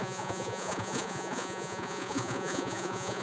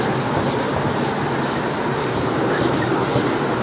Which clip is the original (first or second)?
second